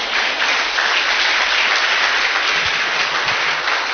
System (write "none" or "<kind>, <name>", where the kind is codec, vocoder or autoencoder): none